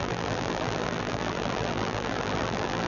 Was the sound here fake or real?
fake